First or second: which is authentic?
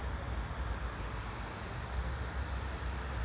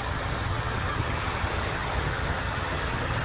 first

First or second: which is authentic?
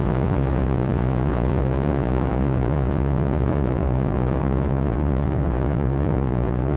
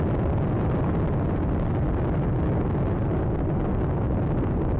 second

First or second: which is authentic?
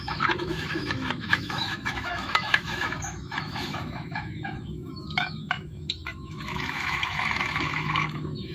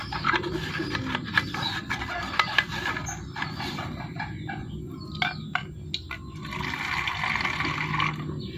second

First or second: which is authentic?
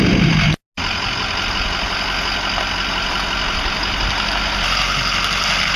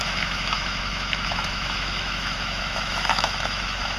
first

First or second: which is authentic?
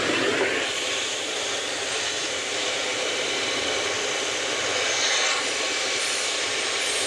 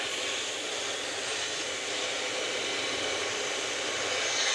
second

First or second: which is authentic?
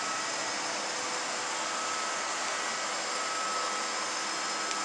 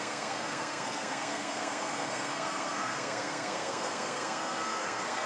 first